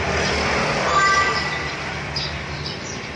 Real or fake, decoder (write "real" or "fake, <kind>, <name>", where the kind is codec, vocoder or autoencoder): real